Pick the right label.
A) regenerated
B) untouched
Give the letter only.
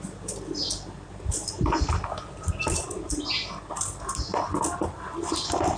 B